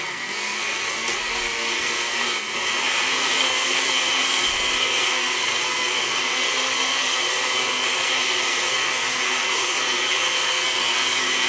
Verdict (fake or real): fake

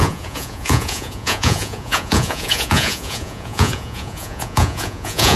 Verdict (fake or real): fake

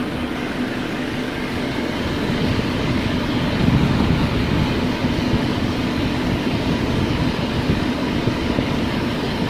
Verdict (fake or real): fake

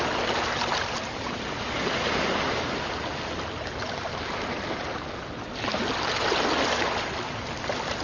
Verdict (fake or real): real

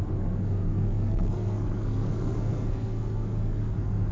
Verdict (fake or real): fake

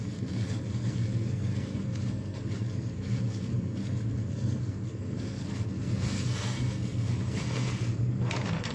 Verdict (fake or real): fake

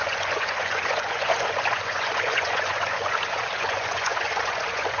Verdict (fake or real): fake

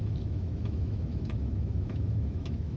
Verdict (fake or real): fake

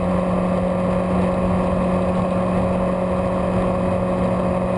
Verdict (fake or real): real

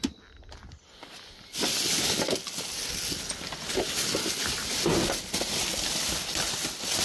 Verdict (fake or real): real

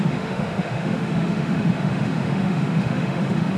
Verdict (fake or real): fake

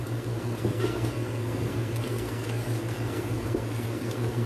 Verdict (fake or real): fake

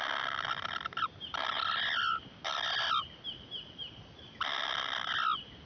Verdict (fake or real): real